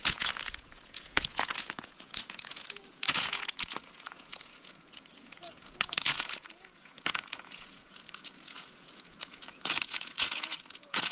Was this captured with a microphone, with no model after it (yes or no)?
no